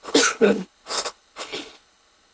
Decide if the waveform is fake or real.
fake